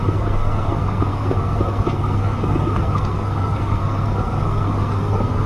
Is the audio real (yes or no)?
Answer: no